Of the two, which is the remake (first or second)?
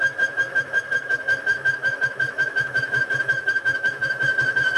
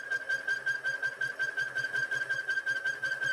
first